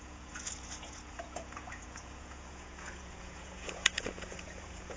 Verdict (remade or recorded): remade